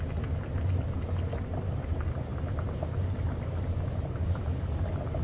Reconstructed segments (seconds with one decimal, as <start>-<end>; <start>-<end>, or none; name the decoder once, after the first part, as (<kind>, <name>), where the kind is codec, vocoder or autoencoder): none